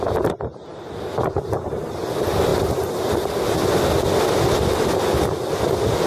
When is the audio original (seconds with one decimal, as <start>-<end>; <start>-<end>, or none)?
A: 0.0-6.1